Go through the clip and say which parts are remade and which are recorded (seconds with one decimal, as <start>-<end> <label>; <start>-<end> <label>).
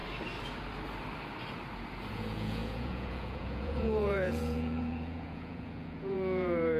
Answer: 0.0-2.1 recorded; 2.1-6.8 remade